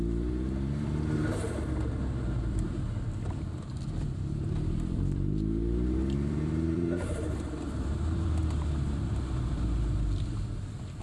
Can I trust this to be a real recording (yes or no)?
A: no